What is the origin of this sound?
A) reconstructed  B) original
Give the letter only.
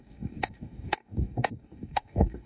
A